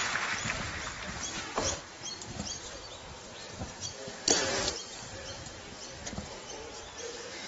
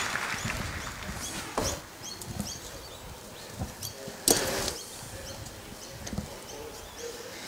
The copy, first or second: first